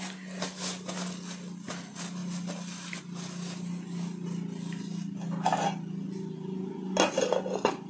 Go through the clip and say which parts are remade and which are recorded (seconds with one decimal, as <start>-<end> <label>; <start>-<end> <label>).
0.0-7.9 recorded